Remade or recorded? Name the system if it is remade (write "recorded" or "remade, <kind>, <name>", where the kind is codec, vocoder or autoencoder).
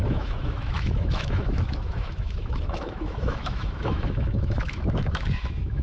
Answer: remade, autoencoder, DAC-VAE